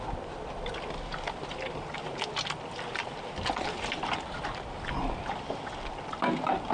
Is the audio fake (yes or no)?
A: no